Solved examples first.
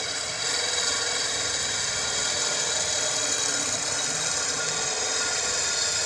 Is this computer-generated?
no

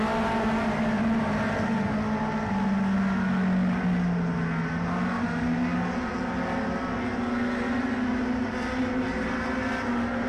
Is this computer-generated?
no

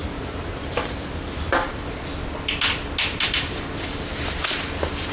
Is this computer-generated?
no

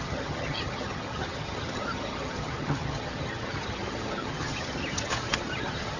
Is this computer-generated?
yes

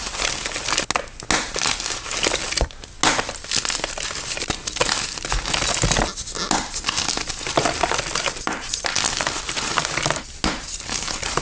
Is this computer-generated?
no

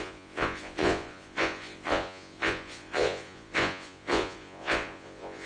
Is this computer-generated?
yes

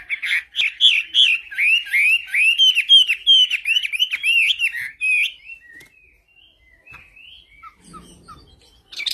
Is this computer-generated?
no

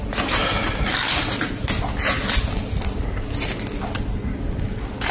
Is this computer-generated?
no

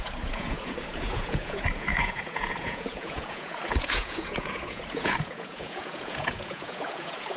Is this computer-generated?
yes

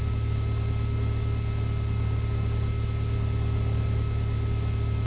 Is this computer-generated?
no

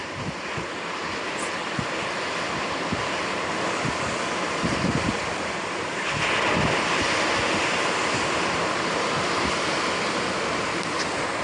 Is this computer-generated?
yes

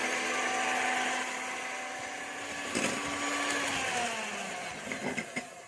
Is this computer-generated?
no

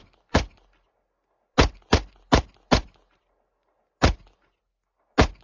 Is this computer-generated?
no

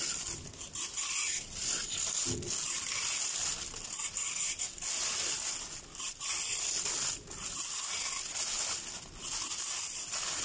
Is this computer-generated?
no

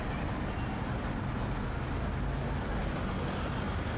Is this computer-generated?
no